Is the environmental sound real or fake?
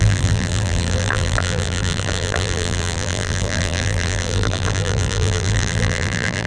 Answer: fake